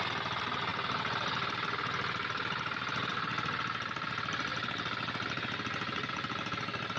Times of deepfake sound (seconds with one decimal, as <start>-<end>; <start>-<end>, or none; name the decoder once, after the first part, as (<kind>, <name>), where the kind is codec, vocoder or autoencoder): none